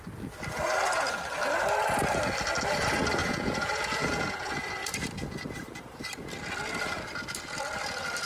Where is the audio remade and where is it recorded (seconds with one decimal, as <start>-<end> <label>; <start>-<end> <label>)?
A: 0.0-3.2 recorded; 3.2-4.5 remade; 4.5-8.3 recorded